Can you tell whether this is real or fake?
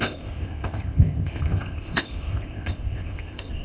fake